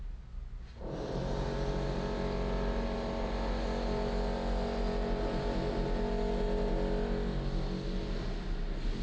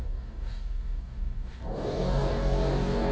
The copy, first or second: second